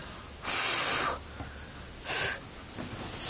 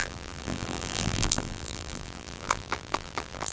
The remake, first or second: second